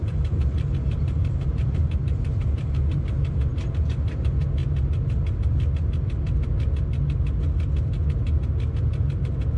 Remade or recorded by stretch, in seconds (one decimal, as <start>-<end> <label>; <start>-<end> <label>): 0.0-4.6 remade; 4.6-9.2 recorded; 9.2-9.6 remade